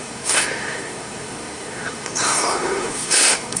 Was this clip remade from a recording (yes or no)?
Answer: yes